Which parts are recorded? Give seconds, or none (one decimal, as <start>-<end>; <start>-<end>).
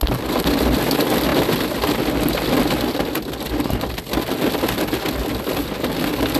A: 0.0-6.4